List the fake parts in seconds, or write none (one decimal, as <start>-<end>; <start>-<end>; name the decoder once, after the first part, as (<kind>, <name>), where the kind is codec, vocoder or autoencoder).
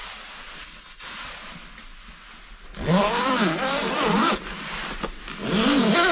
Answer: none